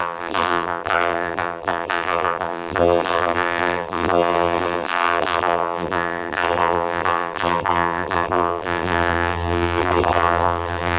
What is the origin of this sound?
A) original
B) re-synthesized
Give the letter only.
B